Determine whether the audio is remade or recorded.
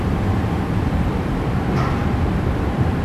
recorded